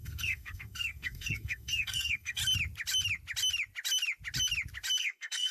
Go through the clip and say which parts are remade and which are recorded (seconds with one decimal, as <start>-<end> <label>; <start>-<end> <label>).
0.0-2.4 remade; 2.4-5.0 recorded; 5.0-5.5 remade

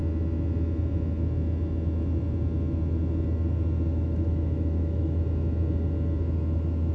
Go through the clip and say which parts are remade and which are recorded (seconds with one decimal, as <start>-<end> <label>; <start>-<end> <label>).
0.0-3.9 recorded; 3.9-5.2 remade; 5.2-6.9 recorded

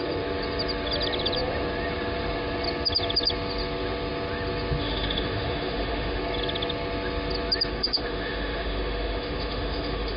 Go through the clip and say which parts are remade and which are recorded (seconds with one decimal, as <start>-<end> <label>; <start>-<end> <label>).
0.0-4.8 recorded; 4.8-6.2 remade; 6.2-7.7 recorded; 7.7-10.2 remade

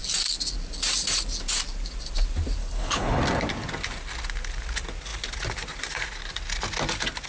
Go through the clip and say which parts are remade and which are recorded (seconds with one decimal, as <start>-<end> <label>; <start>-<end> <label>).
0.0-2.6 recorded; 2.6-3.2 remade; 3.2-7.3 recorded

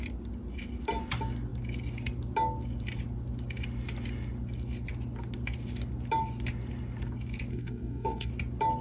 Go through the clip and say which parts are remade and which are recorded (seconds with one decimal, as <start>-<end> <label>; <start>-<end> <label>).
0.0-7.5 recorded; 7.5-8.3 remade; 8.3-8.8 recorded

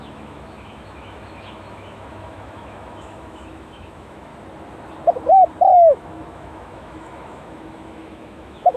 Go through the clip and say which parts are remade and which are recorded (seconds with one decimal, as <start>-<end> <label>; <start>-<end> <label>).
0.0-4.3 remade; 4.3-5.7 recorded; 5.7-8.8 remade

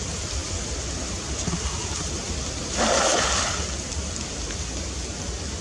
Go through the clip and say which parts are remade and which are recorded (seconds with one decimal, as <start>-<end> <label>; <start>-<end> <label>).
0.0-5.6 recorded